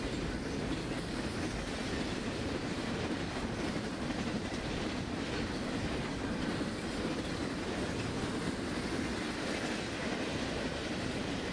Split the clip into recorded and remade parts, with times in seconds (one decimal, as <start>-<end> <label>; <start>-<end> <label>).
0.0-1.8 recorded; 1.8-6.5 remade; 6.5-11.5 recorded